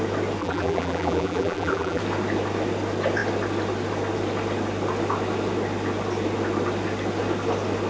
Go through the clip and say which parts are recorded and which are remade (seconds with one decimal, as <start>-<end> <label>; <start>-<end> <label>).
0.0-0.4 recorded; 0.4-2.0 remade; 2.0-7.9 recorded